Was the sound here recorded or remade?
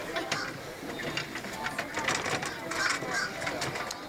recorded